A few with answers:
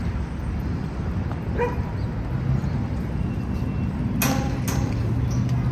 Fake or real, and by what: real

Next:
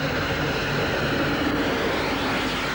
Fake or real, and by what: real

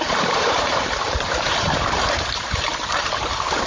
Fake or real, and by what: fake, vocoder, BigVGAN v2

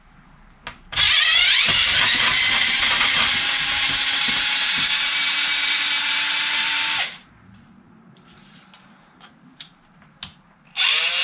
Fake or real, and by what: fake, vocoder, BigVGAN v2